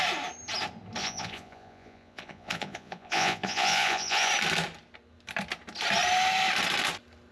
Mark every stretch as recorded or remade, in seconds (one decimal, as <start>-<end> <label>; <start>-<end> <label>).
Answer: 0.0-1.0 recorded; 1.0-4.3 remade; 4.3-7.3 recorded

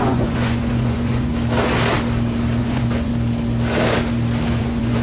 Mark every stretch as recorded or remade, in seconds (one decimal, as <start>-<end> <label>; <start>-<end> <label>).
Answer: 0.0-1.3 remade; 1.3-2.6 recorded; 2.6-3.1 remade; 3.1-4.6 recorded; 4.6-5.0 remade